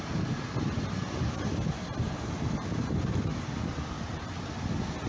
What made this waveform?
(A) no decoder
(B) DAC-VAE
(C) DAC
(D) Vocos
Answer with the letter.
A